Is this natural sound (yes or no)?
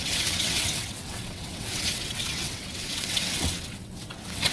no